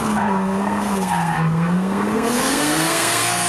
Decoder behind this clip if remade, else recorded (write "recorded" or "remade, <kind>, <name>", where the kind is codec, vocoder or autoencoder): remade, codec, SNAC